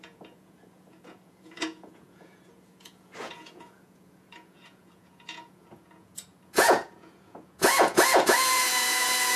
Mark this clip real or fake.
fake